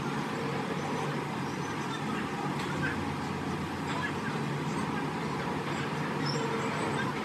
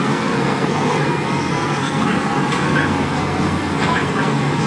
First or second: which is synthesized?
second